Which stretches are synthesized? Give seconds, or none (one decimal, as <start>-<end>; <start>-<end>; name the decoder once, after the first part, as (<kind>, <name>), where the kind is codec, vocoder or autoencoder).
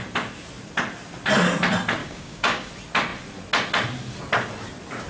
2.0-2.7 (codec, DAC)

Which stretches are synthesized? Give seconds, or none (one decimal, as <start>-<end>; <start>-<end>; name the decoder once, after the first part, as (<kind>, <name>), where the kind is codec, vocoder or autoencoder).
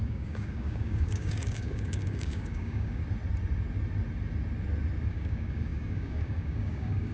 0.0-3.0 (codec, DAC); 5.1-7.1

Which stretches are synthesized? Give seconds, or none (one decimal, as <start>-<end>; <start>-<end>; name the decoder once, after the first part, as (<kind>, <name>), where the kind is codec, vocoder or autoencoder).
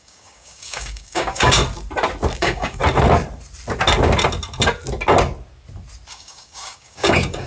0.0-1.6 (codec, DAC); 2.4-2.8; 6.1-7.5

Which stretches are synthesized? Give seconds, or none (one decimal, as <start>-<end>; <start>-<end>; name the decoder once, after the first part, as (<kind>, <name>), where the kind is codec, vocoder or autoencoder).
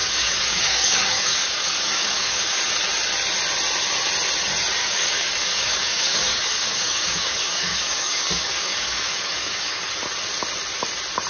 0.0-2.6 (codec, DAC); 4.8-9.9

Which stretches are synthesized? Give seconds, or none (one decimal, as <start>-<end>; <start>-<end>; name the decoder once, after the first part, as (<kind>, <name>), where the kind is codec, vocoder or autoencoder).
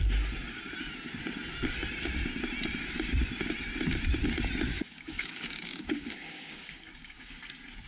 4.7-7.4 (codec, DAC)